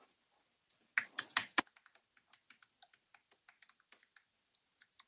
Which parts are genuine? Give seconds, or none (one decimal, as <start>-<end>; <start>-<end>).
0.0-5.1